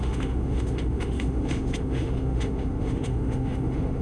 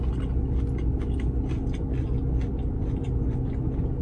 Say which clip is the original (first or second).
second